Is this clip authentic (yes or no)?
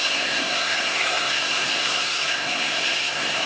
no